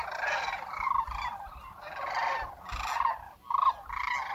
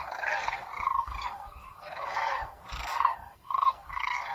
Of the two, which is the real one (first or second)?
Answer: first